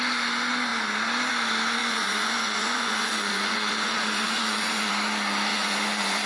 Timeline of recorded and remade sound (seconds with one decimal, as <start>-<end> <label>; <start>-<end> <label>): 0.0-1.8 recorded; 1.8-4.9 remade; 4.9-5.5 recorded; 5.5-6.3 remade